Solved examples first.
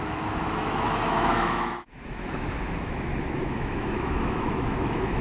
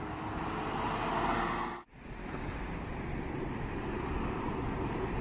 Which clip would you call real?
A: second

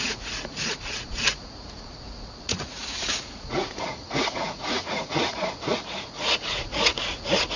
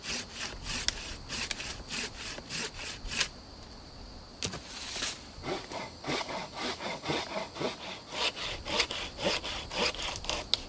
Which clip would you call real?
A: second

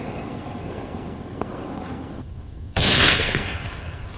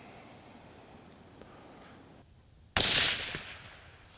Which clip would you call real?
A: second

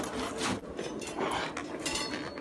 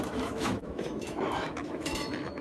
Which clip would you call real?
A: first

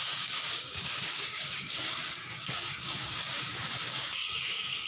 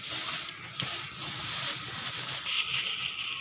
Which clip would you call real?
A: second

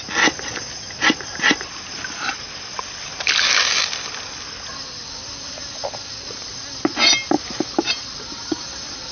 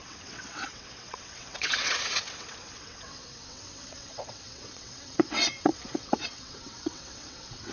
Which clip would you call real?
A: first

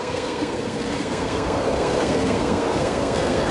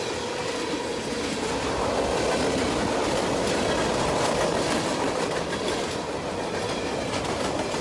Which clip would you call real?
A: second